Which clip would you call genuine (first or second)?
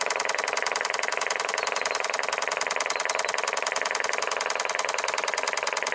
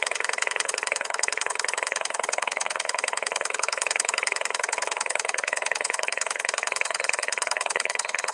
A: first